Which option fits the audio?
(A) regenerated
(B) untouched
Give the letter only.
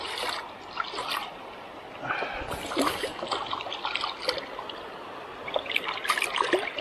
B